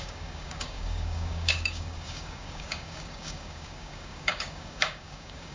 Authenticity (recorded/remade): remade